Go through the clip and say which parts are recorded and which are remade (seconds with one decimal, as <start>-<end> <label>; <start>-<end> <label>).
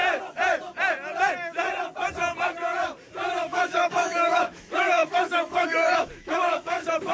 0.0-3.4 recorded; 3.4-7.1 remade